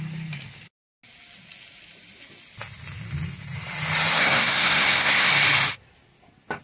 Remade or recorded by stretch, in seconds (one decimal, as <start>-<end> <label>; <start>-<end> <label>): 0.0-4.2 recorded; 4.2-5.3 remade; 5.3-6.6 recorded